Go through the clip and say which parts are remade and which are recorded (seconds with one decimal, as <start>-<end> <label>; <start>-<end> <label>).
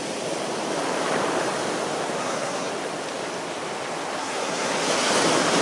0.0-2.2 recorded; 2.2-2.7 remade; 2.7-4.2 recorded; 4.2-4.7 remade; 4.7-5.6 recorded